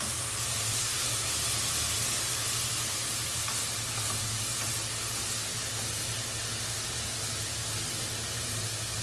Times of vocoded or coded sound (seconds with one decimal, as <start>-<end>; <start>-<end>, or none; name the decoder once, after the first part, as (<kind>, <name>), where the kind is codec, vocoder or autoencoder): 0.7-1.3 (codec, SNAC)